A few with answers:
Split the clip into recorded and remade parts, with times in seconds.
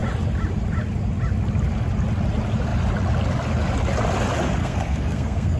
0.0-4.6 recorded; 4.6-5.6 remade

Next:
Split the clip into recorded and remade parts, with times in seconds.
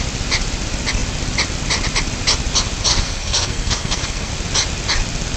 0.0-2.9 recorded; 2.9-4.3 remade; 4.3-5.4 recorded